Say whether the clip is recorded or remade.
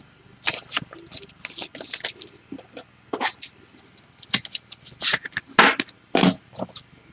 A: recorded